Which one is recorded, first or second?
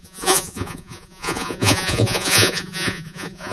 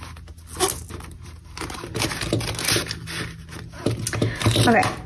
second